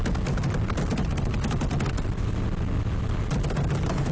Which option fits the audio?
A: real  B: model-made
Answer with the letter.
A